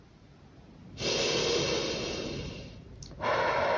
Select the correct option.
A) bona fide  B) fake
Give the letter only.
A